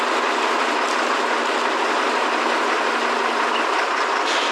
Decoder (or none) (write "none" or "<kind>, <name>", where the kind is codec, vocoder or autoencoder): none